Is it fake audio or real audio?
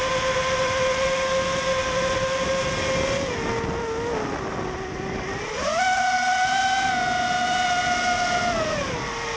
real